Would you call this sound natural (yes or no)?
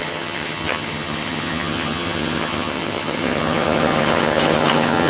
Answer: no